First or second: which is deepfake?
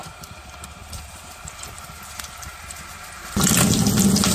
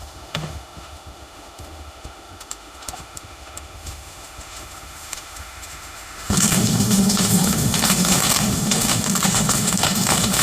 second